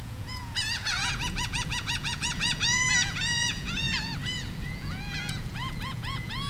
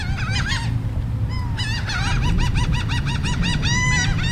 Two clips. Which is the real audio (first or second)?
second